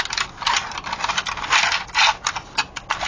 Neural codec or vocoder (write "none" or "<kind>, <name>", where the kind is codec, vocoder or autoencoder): none